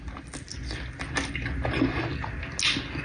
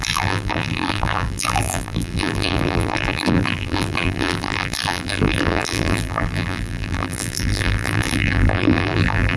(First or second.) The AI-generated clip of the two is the second